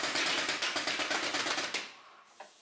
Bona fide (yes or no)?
yes